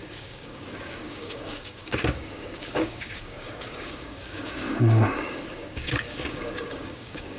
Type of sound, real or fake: fake